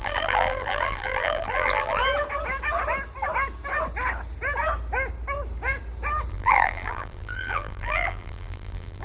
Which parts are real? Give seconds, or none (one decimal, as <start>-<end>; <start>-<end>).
2.0-6.3